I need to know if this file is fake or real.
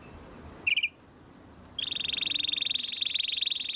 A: real